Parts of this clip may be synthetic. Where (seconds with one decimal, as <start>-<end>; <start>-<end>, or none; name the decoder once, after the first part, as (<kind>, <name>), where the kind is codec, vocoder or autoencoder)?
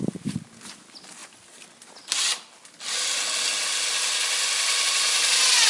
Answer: none